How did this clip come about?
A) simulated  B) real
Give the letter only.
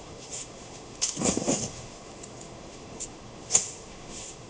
A